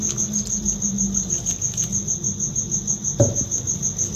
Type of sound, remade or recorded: recorded